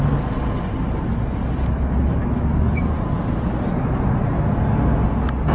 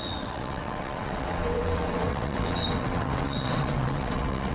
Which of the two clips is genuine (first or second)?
first